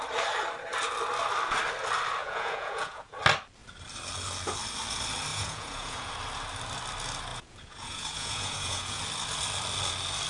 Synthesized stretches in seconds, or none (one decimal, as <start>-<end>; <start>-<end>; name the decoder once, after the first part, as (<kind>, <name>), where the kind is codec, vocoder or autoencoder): 2.2-3.1 (vocoder, Vocos); 5.3-6.1; 7.3-9.0